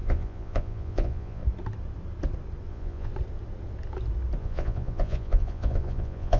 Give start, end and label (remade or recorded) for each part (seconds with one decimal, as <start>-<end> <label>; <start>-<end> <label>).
0.0-1.4 remade; 1.4-2.7 recorded; 2.7-3.1 remade; 3.1-4.4 recorded; 4.4-6.4 remade